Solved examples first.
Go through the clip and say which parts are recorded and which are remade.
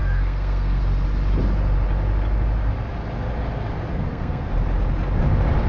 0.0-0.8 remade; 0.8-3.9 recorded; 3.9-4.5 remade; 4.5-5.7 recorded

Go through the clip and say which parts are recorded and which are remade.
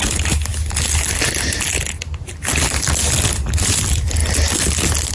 0.0-5.1 recorded